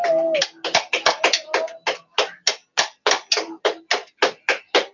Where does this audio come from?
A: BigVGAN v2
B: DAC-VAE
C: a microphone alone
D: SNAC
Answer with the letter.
C